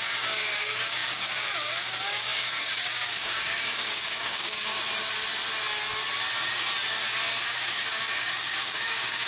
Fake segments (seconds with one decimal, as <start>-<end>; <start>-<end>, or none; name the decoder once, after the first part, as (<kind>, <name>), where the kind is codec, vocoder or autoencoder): 0.0-4.7 (codec, DAC); 7.5-9.3